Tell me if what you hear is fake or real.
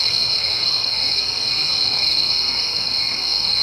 fake